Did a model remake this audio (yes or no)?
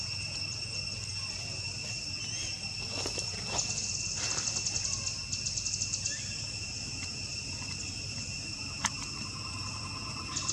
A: no